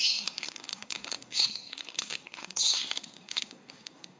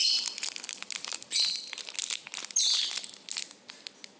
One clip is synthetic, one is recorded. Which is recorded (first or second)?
second